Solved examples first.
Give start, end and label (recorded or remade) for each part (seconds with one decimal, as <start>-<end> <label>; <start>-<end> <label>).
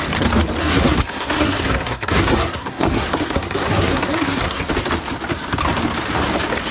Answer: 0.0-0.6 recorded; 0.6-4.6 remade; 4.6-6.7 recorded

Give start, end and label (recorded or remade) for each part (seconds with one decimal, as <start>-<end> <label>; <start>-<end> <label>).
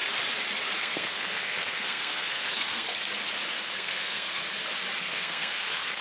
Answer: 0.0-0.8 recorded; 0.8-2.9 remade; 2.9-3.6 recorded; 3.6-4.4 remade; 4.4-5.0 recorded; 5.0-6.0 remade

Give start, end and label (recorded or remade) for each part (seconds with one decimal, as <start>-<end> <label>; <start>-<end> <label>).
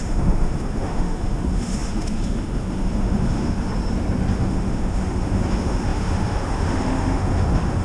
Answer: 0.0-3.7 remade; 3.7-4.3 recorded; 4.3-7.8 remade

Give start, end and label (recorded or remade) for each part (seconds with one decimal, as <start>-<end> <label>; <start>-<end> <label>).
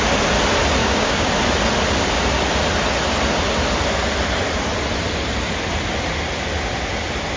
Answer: 0.0-0.8 recorded; 0.8-1.3 remade; 1.3-7.4 recorded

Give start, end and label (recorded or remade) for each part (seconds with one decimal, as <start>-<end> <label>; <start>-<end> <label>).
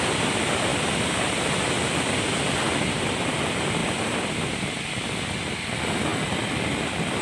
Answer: 0.0-7.2 recorded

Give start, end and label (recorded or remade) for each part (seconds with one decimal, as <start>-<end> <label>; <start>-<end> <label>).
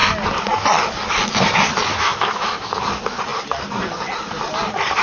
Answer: 0.0-1.9 recorded; 1.9-2.7 remade; 2.7-5.0 recorded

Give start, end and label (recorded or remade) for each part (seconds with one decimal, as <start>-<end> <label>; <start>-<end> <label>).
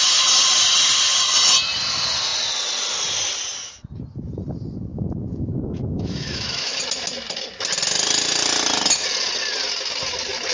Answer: 0.0-4.9 recorded; 4.9-6.8 remade; 6.8-10.5 recorded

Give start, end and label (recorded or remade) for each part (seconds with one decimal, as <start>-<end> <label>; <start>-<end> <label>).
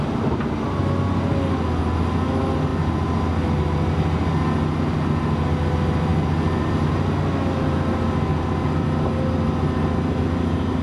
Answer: 0.0-10.8 recorded